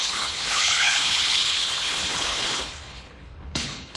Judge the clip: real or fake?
fake